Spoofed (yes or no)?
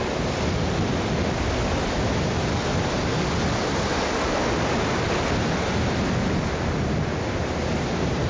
no